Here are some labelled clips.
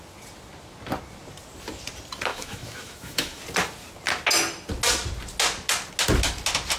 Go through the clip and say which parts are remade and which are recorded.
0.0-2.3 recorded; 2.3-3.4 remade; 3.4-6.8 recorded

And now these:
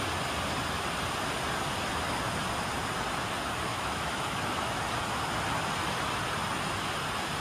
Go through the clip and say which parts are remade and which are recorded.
0.0-3.7 recorded; 3.7-4.8 remade; 4.8-7.4 recorded